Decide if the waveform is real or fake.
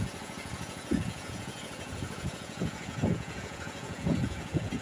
fake